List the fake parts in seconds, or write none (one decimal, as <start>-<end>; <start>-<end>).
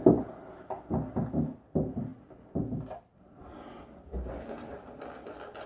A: none